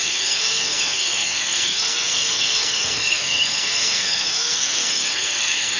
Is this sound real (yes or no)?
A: no